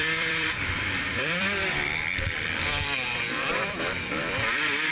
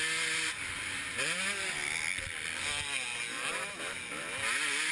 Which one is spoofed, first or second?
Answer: first